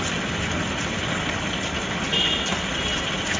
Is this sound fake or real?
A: real